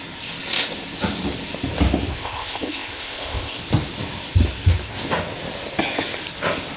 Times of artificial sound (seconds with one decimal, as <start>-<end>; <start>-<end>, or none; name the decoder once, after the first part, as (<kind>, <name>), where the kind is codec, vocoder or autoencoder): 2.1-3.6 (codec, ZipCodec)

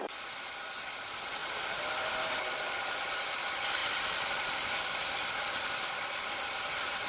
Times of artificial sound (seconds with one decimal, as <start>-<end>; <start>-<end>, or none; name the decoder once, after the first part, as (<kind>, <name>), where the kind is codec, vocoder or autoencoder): 1.4-3.1 (vocoder, BigVGAN v2); 3.8-6.4

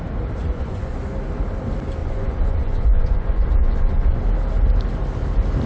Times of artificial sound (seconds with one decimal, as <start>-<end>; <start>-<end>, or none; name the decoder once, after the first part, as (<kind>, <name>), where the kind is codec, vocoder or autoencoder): 0.4-1.0 (vocoder, Vocos); 2.0-4.2

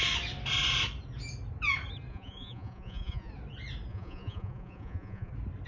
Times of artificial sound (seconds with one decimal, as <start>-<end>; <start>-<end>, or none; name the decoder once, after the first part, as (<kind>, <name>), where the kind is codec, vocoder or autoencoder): 2.1-3.3 (vocoder, Vocos); 3.9-5.3

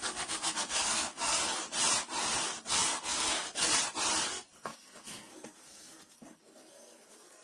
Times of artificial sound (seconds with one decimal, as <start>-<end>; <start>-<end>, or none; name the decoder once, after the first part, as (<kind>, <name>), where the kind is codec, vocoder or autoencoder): 0.0-1.4 (codec, SNAC); 2.7-3.7; 4.3-7.4